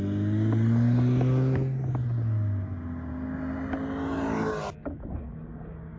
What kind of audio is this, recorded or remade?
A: recorded